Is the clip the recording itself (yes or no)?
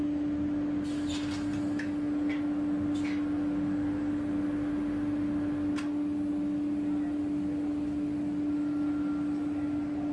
yes